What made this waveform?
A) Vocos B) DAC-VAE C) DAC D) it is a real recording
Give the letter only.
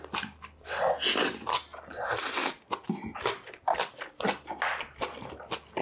D